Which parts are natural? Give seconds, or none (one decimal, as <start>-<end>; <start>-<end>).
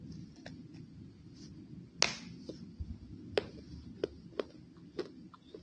0.0-5.6